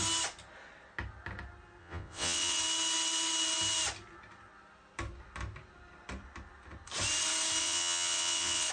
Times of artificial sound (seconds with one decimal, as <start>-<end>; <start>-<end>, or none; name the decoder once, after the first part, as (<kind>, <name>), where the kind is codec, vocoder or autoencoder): 1.8-2.6 (vocoder, WaveNeXt); 7.6-8.7